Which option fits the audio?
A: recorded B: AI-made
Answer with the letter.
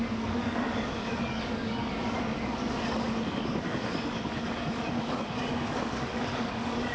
B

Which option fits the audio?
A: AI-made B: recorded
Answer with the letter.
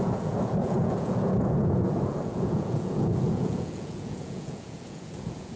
A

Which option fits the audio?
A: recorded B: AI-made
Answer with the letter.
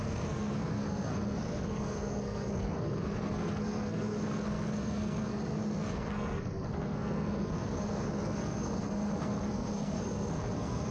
B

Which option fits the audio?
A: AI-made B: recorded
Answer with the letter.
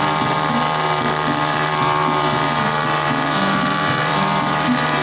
A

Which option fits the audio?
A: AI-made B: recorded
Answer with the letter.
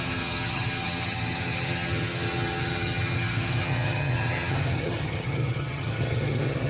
A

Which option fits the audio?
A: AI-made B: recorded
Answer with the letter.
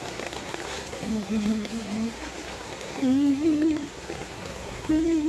A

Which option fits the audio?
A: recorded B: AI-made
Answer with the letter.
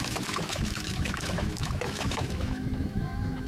B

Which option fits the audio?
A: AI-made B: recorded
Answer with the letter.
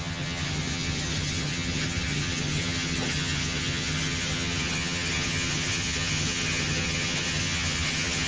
A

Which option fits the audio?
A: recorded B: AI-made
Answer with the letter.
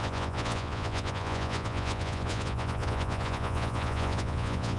B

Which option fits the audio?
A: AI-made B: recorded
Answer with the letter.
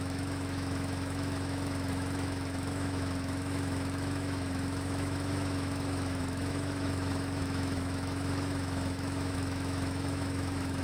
A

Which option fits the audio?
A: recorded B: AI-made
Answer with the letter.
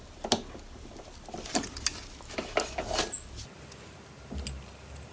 A